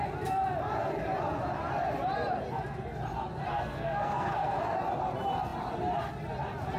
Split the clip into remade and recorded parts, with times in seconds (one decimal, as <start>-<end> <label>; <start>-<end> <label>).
0.0-3.5 recorded; 3.5-4.6 remade; 4.6-6.8 recorded